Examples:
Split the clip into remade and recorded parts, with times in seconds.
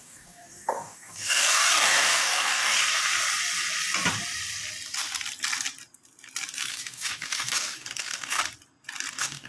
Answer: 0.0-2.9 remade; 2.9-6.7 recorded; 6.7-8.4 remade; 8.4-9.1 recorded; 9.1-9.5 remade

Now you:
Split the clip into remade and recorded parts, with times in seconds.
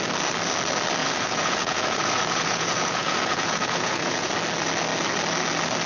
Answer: 0.0-1.0 recorded; 1.0-4.3 remade; 4.3-5.9 recorded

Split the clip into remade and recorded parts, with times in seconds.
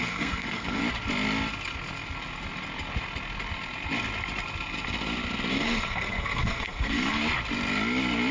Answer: 0.0-0.8 remade; 0.8-5.5 recorded; 5.5-7.2 remade; 7.2-8.3 recorded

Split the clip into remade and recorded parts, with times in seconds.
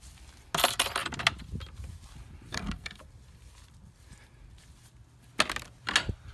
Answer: 0.0-2.5 recorded; 2.5-3.0 remade; 3.0-6.3 recorded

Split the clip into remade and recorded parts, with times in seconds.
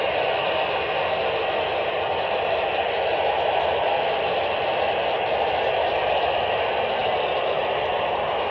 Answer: 0.0-8.5 recorded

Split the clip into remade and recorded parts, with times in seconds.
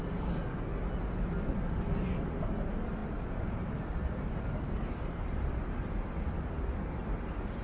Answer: 0.0-3.0 recorded; 3.0-5.6 remade; 5.6-7.6 recorded